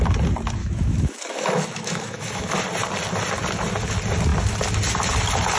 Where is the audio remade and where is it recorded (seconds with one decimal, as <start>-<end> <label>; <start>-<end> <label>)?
0.0-0.6 recorded; 0.6-2.6 remade; 2.6-5.6 recorded